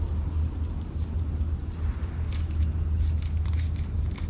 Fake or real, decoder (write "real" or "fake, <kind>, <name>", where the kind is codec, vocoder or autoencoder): real